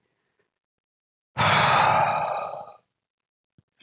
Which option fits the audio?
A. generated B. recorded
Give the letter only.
B